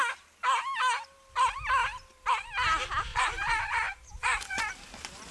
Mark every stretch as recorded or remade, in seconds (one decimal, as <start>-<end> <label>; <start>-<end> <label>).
0.0-3.1 recorded; 3.1-4.7 remade; 4.7-5.3 recorded